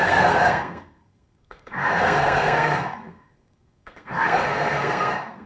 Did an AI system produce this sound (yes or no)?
yes